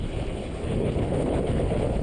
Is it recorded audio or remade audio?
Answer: remade